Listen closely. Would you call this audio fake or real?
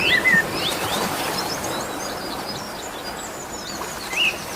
real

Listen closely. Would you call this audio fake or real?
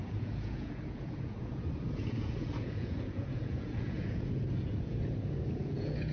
fake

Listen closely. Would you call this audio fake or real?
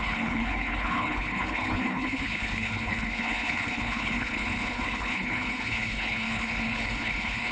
fake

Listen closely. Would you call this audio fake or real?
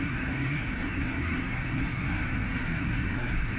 fake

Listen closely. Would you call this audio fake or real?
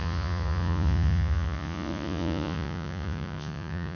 fake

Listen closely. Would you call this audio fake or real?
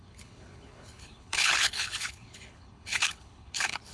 fake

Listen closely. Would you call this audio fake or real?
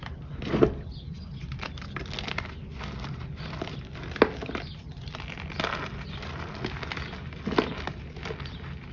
real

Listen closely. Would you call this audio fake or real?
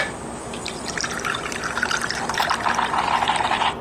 real